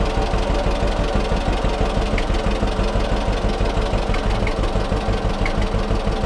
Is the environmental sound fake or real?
real